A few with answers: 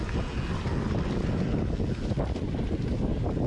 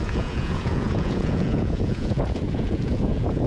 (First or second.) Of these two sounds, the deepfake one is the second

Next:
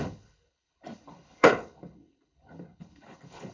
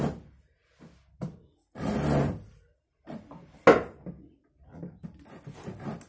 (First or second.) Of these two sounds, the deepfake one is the first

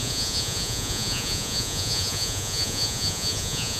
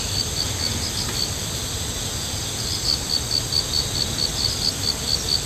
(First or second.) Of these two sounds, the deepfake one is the first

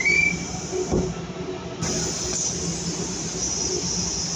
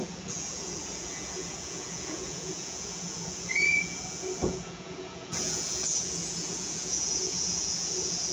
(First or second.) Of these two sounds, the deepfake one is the second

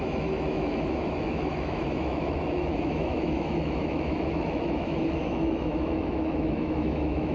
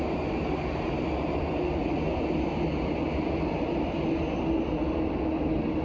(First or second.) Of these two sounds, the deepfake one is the first